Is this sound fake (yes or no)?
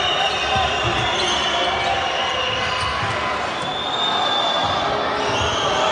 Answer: no